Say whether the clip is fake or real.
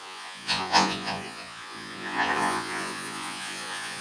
fake